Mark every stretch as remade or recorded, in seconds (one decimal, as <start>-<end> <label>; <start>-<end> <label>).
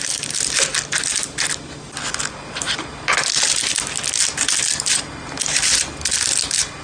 0.0-6.8 recorded